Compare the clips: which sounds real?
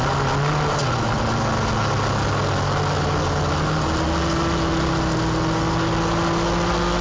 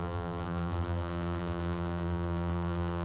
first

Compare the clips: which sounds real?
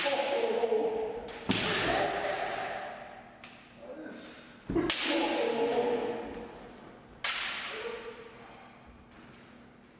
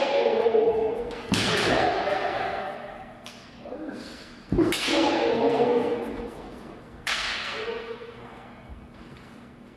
first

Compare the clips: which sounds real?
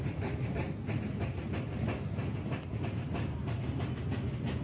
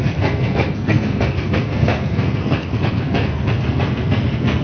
first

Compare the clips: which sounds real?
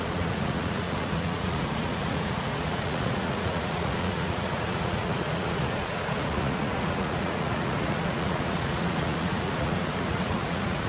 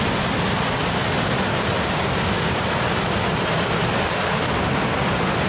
second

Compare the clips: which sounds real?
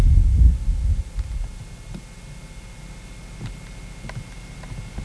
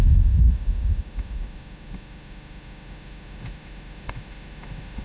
first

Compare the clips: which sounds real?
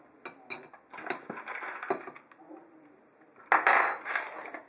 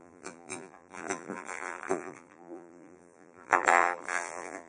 first